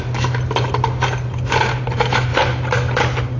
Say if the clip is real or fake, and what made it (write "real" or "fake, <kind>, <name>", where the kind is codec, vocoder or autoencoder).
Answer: real